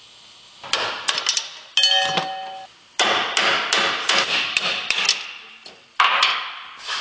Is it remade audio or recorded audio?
recorded